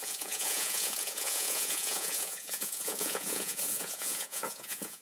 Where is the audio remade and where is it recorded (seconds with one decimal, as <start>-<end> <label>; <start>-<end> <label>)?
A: 0.0-5.0 remade

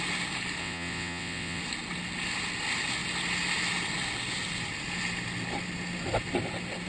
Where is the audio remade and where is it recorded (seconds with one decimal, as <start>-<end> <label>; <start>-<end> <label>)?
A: 0.0-0.6 recorded; 0.6-1.6 remade; 1.6-6.9 recorded

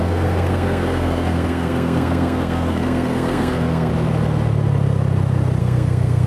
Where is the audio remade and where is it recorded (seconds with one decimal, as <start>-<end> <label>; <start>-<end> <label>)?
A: 0.0-3.9 remade; 3.9-5.6 recorded; 5.6-6.3 remade